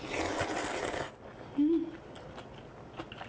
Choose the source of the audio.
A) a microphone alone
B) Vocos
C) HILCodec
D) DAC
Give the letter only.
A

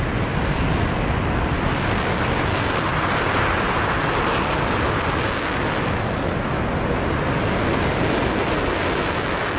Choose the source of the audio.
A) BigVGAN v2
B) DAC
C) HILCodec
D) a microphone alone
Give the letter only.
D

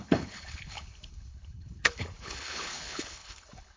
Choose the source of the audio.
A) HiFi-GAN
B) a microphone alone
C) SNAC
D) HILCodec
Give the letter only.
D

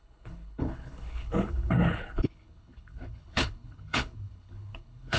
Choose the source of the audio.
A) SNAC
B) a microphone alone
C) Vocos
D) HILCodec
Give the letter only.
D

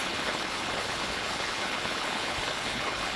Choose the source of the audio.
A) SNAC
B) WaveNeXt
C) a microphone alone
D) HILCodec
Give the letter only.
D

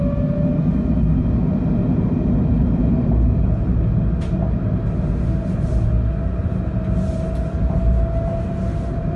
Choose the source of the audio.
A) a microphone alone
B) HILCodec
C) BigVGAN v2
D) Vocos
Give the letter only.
A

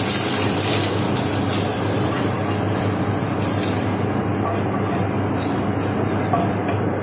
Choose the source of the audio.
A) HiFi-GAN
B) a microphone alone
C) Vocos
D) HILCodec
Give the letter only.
B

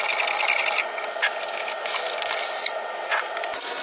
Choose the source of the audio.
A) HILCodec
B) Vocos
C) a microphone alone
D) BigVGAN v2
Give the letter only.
C